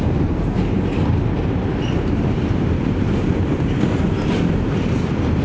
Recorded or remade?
remade